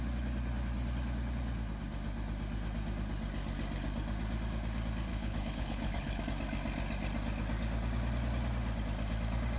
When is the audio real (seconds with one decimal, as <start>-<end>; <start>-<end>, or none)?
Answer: 0.0-5.1; 6.2-9.6